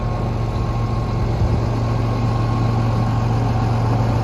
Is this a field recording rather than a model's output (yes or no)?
yes